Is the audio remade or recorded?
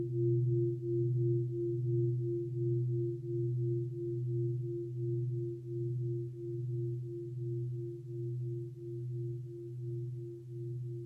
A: recorded